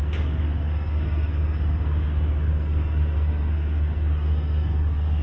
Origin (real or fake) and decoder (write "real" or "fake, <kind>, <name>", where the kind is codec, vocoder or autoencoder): fake, codec, SNAC